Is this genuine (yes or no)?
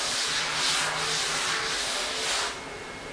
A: yes